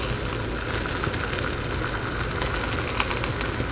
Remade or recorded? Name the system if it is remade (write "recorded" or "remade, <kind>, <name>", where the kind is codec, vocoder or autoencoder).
recorded